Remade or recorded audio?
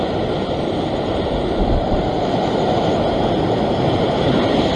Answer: recorded